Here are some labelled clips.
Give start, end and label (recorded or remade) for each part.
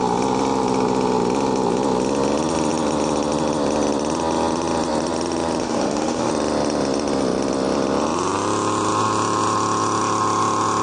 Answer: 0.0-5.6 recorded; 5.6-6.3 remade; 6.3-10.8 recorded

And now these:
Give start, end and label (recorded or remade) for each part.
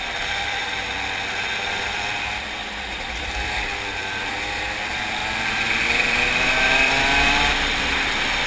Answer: 0.0-0.6 remade; 0.6-1.3 recorded; 1.3-2.6 remade; 2.6-3.2 recorded; 3.2-8.5 remade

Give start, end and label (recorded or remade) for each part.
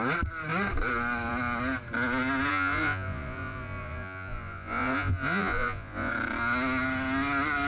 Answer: 0.0-2.5 recorded; 2.5-6.1 remade; 6.1-7.7 recorded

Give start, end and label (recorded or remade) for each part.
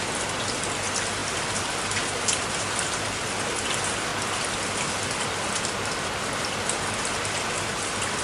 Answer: 0.0-8.2 recorded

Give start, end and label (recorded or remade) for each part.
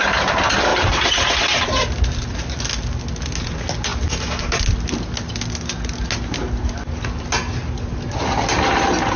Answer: 0.0-0.7 recorded; 0.7-1.8 remade; 1.8-9.2 recorded